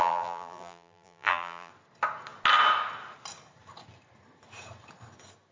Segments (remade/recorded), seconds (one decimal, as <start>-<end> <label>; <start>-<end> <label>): 0.0-1.7 remade; 1.7-5.5 recorded